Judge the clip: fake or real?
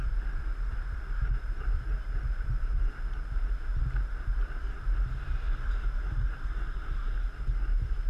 real